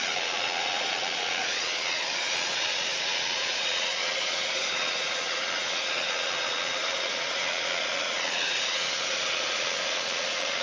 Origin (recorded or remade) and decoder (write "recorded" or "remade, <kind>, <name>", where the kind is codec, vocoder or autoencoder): remade, vocoder, Vocos